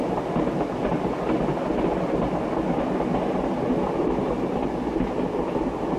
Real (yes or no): yes